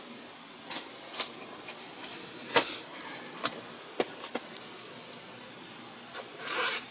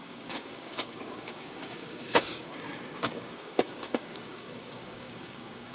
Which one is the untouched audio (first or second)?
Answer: first